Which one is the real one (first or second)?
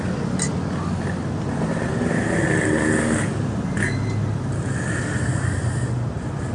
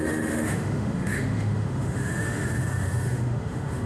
first